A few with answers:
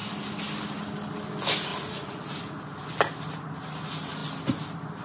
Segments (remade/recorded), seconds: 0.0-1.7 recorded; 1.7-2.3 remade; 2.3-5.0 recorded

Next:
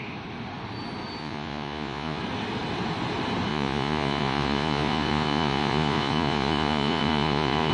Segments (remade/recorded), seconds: 0.0-1.2 recorded; 1.2-2.2 remade; 2.2-3.5 recorded; 3.5-7.7 remade

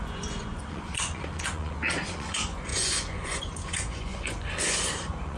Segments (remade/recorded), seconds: 0.0-5.4 remade

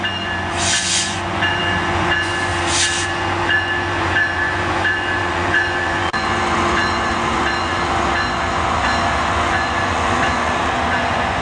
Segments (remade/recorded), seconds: 0.0-2.5 remade; 2.5-3.0 recorded; 3.0-11.4 remade

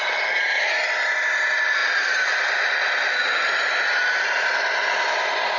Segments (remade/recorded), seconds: 0.0-5.6 recorded

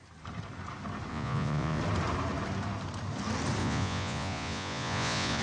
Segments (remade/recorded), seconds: 0.0-1.1 recorded; 1.1-1.8 remade; 1.8-3.6 recorded; 3.6-5.4 remade

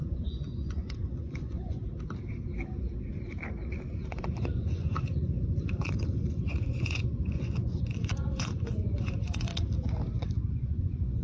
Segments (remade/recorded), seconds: 0.0-1.8 remade; 1.8-4.1 recorded; 4.1-9.5 remade; 9.5-10.5 recorded; 10.5-11.2 remade

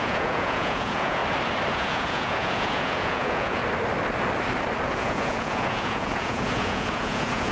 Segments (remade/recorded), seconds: 0.0-1.2 remade; 1.2-1.7 recorded; 1.7-3.6 remade; 3.6-4.9 recorded; 4.9-7.5 remade